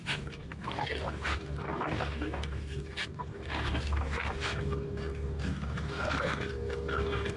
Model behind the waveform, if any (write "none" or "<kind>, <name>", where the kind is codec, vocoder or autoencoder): codec, DAC